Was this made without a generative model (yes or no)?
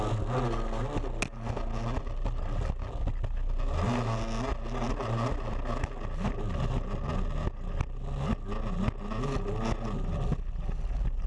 yes